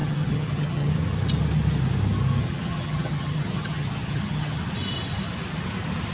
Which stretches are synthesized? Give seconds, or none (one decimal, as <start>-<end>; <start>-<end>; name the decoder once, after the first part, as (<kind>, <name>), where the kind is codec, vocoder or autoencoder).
0.0-0.9 (vocoder, HiFi-GAN); 2.4-4.6